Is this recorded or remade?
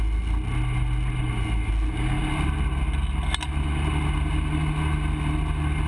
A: recorded